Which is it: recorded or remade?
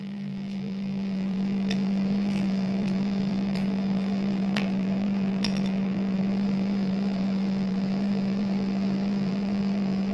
remade